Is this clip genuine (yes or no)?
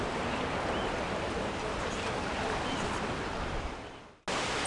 yes